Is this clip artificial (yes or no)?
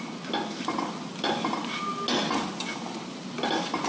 no